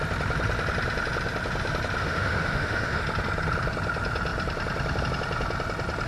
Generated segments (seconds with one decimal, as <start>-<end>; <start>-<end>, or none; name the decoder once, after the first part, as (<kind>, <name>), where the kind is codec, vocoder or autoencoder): 2.0-3.0 (autoencoder, DAC-VAE)